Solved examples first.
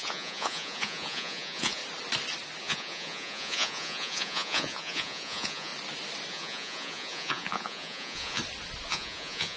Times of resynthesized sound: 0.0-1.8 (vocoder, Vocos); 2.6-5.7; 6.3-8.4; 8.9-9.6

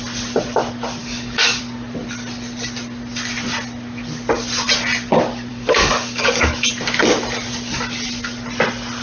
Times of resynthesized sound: 1.0-1.6 (codec, DAC); 5.5-6.7

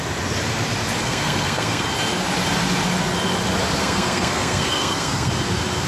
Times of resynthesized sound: 1.0-1.9 (codec, SNAC); 3.8-5.3